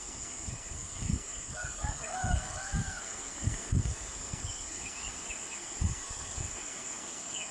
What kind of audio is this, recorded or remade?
remade